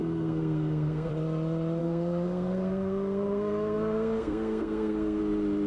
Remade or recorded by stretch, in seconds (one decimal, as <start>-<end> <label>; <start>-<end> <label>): 0.0-1.1 remade; 1.1-1.8 recorded; 1.8-5.2 remade; 5.2-5.7 recorded